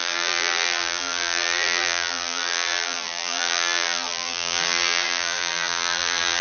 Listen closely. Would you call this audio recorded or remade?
remade